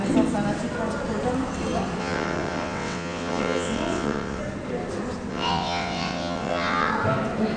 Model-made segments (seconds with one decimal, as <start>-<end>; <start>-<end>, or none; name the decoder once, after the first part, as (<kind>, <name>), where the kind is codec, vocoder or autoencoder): 2.0-4.4 (vocoder, WaveNeXt); 5.3-6.9